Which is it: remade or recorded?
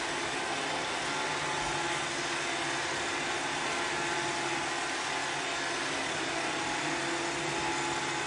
recorded